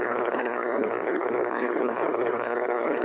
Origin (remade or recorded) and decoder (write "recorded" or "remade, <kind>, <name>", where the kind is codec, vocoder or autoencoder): remade, codec, SNAC